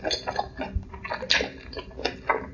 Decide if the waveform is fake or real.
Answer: real